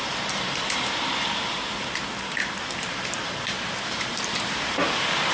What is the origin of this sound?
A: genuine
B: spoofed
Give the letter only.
B